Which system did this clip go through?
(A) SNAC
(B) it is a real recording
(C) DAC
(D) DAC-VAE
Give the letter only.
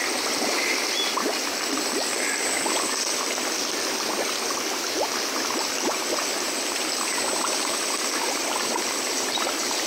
B